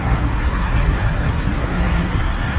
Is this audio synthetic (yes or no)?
yes